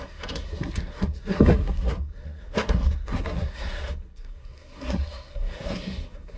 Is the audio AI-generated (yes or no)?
yes